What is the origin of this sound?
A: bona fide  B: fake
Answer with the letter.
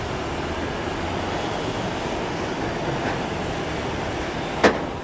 A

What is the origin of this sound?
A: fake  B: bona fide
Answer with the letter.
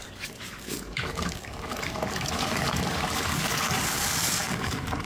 A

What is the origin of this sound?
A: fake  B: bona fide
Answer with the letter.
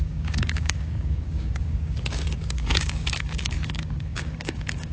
A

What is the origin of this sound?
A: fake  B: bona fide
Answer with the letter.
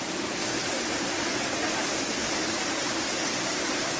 B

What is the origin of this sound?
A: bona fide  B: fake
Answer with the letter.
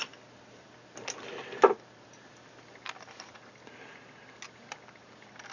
A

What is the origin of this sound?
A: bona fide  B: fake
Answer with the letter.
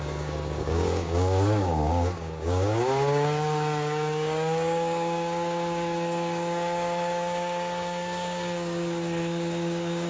B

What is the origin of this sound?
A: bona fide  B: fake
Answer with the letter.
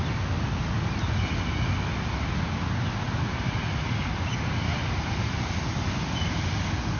A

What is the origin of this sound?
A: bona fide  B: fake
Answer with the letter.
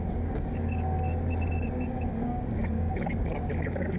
B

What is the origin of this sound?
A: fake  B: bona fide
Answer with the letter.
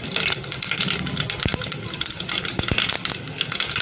B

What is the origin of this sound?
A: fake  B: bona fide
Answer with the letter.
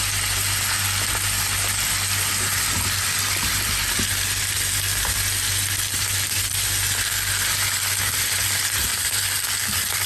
B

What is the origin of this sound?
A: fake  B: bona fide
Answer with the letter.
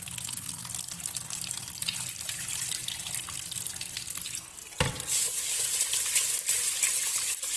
B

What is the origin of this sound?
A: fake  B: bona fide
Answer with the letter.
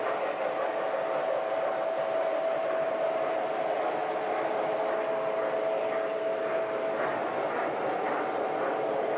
B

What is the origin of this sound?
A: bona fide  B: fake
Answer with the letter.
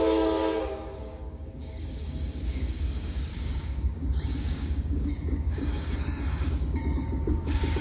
B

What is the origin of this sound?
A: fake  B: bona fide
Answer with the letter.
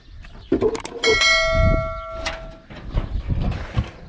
B